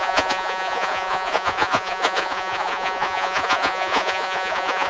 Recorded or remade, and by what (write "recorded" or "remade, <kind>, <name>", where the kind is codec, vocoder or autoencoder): remade, vocoder, Vocos